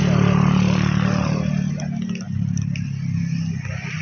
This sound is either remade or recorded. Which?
recorded